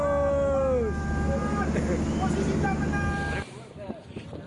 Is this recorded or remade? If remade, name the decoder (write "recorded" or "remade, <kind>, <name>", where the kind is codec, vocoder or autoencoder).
recorded